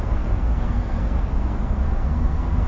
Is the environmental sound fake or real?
fake